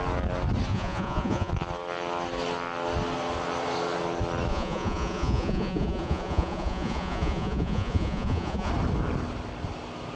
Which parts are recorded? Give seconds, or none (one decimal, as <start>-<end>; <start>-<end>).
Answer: 0.0-0.7; 1.5-4.5; 8.7-10.2